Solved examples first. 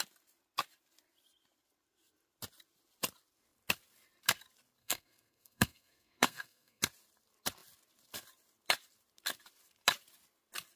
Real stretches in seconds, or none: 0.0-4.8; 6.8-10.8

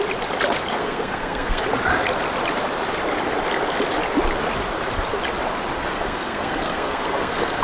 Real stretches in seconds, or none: 0.0-0.7; 1.6-5.8

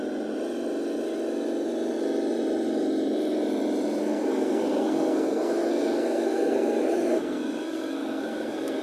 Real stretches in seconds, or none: 0.0-4.0

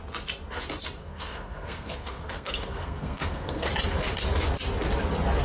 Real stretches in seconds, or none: 0.0-1.0; 3.7-5.4

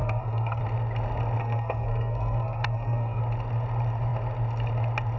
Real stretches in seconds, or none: 0.6-1.4; 3.2-5.2

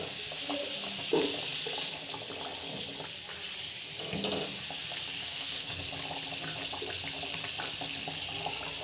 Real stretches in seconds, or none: 0.0-5.2; 5.8-8.8

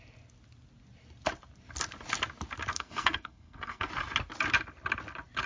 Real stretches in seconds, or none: 0.0-2.7; 3.9-5.5

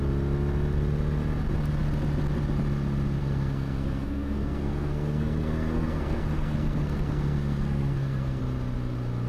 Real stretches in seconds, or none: 0.0-3.2; 8.4-9.3